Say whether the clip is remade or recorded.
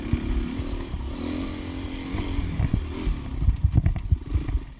recorded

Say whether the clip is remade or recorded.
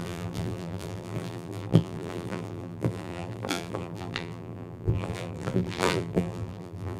remade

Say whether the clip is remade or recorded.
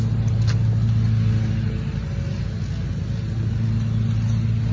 recorded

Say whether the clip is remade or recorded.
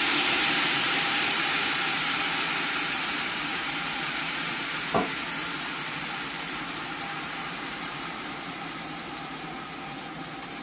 remade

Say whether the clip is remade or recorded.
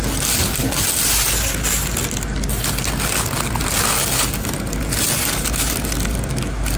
recorded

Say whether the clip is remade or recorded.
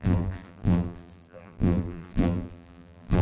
remade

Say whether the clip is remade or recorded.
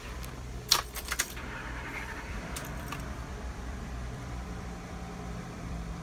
remade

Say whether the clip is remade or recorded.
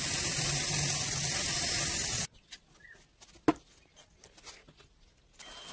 recorded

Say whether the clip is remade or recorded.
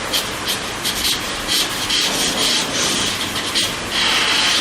recorded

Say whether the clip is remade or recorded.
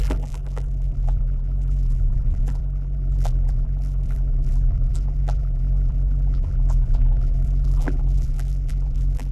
remade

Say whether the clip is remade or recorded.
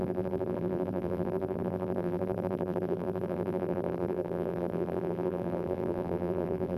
remade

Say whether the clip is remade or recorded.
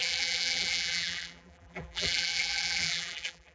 remade